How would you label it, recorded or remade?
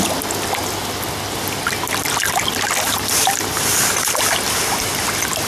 recorded